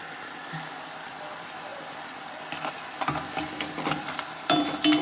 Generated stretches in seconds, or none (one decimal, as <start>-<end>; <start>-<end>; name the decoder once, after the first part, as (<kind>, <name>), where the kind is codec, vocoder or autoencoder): none